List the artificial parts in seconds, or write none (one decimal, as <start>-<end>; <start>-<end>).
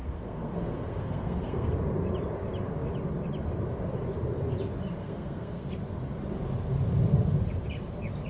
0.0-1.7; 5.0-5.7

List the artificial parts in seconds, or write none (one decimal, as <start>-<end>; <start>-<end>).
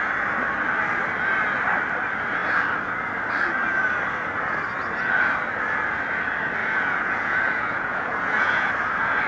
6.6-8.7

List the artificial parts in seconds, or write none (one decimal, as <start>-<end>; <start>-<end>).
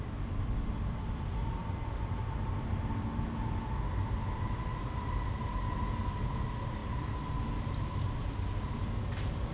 none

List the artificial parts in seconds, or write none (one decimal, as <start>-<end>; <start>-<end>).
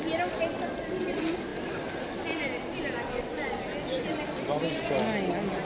none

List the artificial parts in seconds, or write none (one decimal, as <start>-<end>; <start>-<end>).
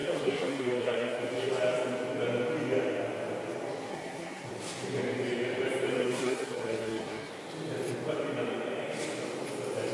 0.0-1.2; 3.9-4.5; 5.9-7.3